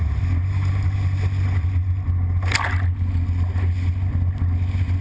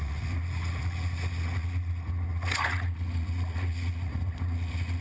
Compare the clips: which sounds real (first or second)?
first